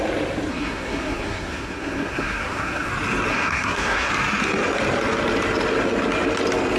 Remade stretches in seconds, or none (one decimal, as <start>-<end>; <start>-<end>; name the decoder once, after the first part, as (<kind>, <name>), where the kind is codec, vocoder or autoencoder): 0.5-2.9 (codec, SNAC); 3.3-4.1